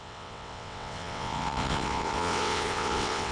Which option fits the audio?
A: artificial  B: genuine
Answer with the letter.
A